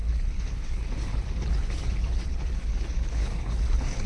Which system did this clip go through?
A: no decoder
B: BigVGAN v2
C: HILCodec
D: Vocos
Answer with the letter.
C